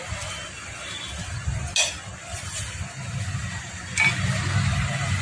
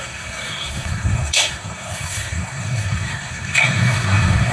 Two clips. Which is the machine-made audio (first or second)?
second